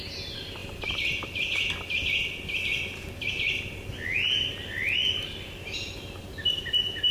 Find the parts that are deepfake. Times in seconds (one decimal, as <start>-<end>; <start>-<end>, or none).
none